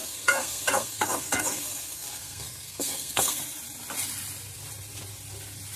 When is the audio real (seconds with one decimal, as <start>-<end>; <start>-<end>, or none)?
3.4-5.8